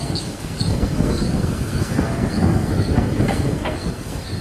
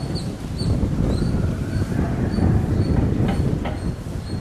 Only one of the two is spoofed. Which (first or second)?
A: first